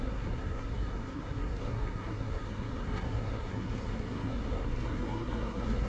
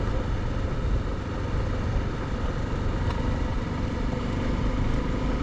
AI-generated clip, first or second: first